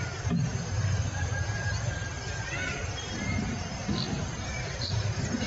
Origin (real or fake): fake